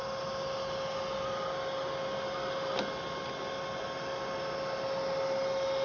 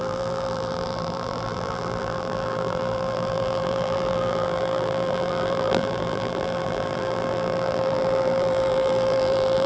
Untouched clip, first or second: first